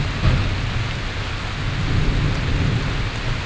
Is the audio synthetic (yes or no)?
no